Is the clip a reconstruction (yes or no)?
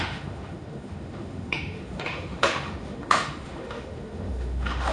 yes